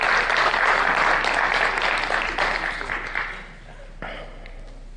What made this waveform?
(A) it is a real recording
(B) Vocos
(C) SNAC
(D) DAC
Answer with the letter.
A